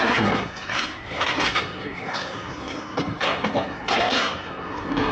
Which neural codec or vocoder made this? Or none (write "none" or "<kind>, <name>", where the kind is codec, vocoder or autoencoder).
codec, SNAC